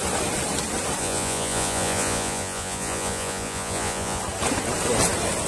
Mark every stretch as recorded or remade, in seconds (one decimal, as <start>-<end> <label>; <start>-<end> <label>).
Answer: 0.0-1.0 recorded; 1.0-4.2 remade; 4.2-5.5 recorded